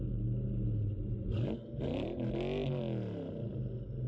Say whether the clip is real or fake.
real